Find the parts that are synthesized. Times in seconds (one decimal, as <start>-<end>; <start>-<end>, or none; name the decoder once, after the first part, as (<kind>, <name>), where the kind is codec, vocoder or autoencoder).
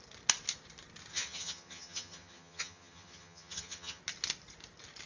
1.1-4.0 (vocoder, HiFi-GAN)